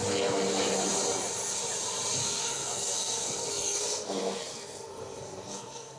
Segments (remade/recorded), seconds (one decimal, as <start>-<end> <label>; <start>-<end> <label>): 0.0-2.2 recorded; 2.2-6.0 remade